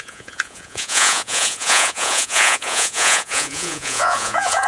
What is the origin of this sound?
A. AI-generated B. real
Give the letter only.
A